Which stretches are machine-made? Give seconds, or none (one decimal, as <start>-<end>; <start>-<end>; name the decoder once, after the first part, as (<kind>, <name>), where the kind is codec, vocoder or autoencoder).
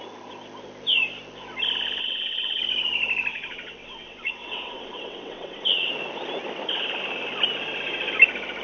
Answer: 2.0-2.6 (vocoder, WaveNeXt); 3.3-5.9